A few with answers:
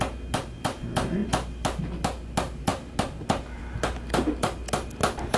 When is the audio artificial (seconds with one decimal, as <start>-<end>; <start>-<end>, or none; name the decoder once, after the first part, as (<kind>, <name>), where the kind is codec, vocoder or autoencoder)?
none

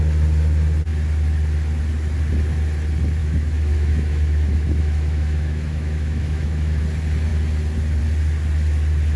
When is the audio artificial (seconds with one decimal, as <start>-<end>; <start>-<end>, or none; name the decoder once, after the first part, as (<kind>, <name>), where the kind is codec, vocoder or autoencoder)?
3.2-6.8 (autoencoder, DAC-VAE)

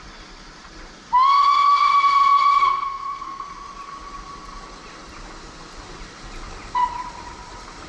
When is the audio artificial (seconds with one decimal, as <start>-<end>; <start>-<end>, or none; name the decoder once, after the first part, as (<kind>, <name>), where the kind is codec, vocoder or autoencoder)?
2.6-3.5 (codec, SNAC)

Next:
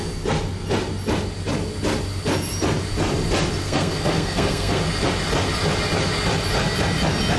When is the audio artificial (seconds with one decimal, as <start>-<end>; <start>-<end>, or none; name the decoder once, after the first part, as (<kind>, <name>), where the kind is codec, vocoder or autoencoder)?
3.6-4.8 (codec, SNAC)